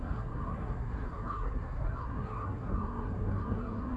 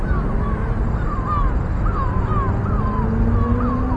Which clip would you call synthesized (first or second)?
first